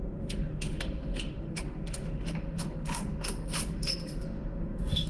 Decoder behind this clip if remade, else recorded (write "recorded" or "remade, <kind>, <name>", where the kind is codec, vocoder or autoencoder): remade, autoencoder, DAC-VAE